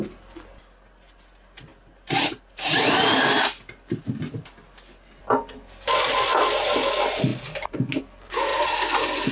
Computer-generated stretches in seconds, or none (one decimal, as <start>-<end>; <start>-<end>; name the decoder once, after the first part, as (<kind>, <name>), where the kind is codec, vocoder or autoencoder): 8.5-9.3 (vocoder, BigVGAN v2)